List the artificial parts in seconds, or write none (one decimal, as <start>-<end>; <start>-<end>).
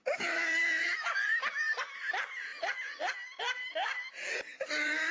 none